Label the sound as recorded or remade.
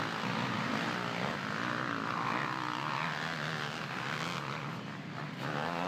recorded